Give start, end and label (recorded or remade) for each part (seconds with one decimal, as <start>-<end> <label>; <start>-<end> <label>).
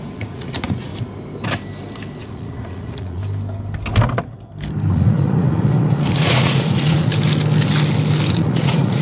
0.0-0.9 remade; 0.9-2.2 recorded; 2.2-3.2 remade; 3.2-4.9 recorded; 4.9-7.1 remade; 7.1-8.3 recorded; 8.3-9.0 remade